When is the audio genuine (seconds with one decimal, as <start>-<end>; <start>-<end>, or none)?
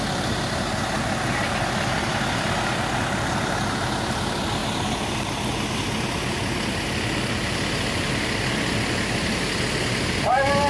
0.0-10.7